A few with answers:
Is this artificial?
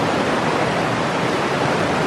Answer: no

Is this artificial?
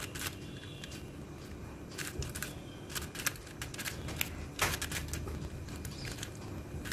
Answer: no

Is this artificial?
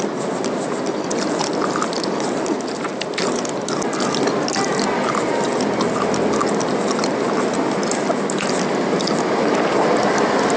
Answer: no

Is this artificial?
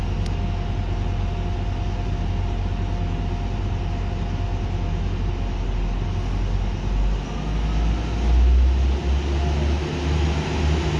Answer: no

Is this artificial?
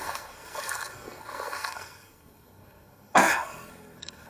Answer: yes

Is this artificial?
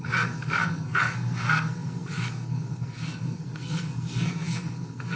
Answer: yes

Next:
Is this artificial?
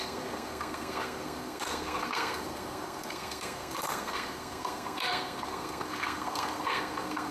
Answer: yes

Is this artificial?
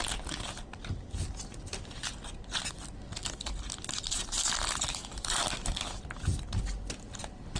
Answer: no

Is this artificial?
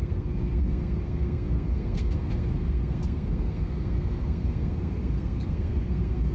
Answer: yes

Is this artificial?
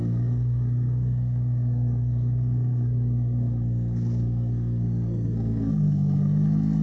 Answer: yes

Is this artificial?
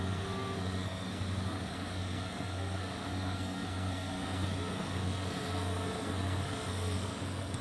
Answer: yes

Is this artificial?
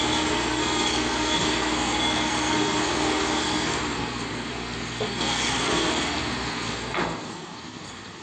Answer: yes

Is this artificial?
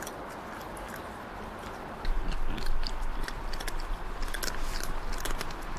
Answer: no